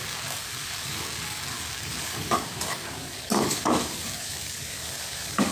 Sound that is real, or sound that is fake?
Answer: fake